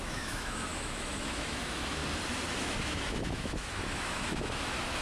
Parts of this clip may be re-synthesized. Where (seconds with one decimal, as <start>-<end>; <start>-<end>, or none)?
0.0-2.0; 2.6-5.0